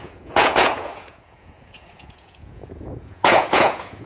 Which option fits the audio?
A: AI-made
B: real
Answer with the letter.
A